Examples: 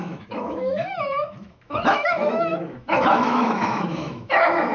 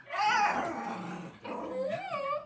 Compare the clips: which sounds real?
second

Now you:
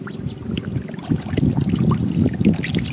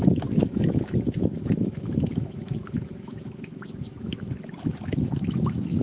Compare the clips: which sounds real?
first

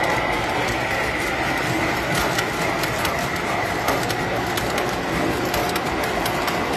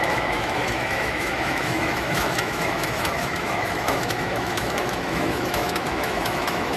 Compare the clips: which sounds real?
first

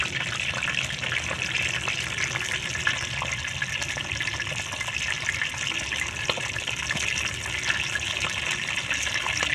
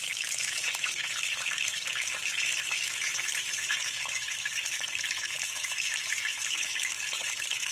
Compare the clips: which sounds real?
first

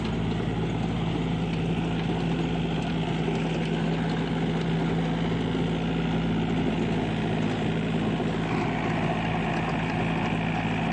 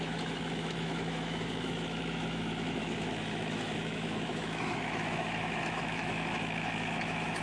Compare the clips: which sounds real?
first